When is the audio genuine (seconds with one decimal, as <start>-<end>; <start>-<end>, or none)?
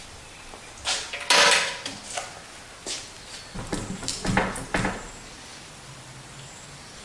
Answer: 0.0-7.0